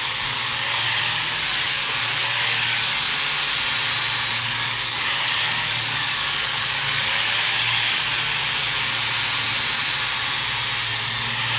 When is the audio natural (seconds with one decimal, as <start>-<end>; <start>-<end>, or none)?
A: 3.1-4.3; 8.1-11.6